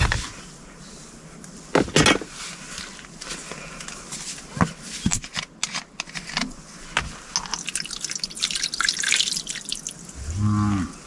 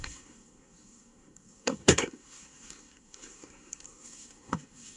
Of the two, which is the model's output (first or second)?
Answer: second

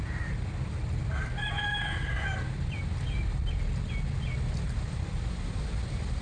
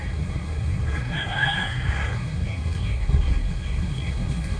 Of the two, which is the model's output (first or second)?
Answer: second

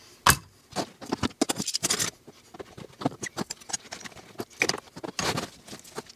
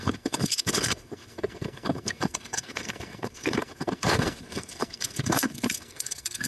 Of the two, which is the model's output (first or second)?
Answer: second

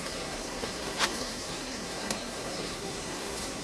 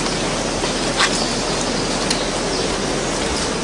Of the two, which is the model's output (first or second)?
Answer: first